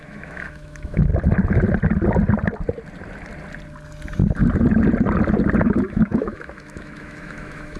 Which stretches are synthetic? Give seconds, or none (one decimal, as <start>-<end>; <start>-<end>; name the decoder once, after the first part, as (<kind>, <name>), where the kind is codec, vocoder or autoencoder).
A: 0.0-1.1 (autoencoder, DAC-VAE); 5.6-7.8